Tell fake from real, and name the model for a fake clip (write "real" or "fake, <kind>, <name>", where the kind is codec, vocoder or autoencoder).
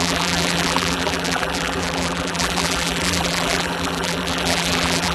fake, vocoder, BigVGAN v2